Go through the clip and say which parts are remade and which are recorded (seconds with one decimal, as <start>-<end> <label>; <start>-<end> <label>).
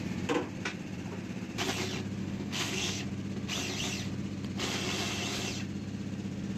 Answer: 0.0-2.2 recorded; 2.2-3.0 remade; 3.0-6.6 recorded